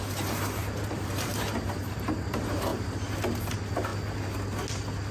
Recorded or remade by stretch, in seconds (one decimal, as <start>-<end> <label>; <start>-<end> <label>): 0.0-2.7 remade; 2.7-3.4 recorded; 3.4-3.9 remade; 3.9-5.1 recorded

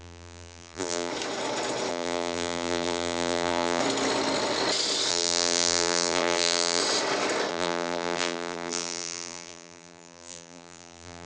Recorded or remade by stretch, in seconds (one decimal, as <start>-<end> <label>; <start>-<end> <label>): 0.0-1.1 remade; 1.1-1.9 recorded; 1.9-3.8 remade; 3.8-5.1 recorded; 5.1-6.8 remade; 6.8-7.5 recorded; 7.5-11.3 remade

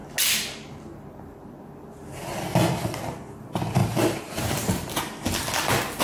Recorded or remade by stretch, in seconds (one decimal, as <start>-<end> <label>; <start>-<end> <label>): 0.0-3.8 recorded; 3.8-4.9 remade; 4.9-6.0 recorded

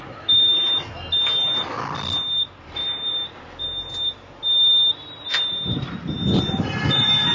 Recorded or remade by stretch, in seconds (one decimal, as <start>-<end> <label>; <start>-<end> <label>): 0.0-0.5 remade; 0.5-2.6 recorded; 2.6-3.7 remade; 3.7-4.9 recorded; 4.9-7.3 remade

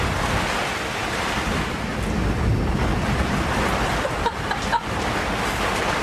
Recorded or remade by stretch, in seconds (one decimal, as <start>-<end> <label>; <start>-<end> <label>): 0.0-6.0 recorded